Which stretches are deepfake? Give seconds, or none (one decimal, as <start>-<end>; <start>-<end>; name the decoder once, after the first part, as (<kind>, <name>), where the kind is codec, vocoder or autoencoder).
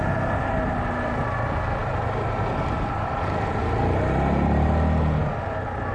none